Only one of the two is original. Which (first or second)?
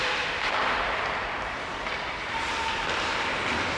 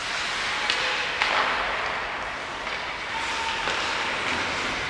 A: second